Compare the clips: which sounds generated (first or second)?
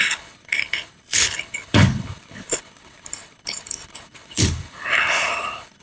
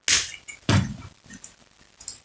first